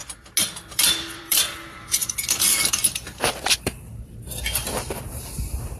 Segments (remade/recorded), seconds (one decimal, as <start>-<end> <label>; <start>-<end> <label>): 0.0-0.6 recorded; 0.6-5.8 remade